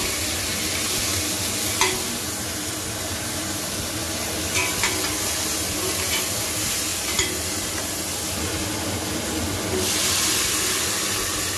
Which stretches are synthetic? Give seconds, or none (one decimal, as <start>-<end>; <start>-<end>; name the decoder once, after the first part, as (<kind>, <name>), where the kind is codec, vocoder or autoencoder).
none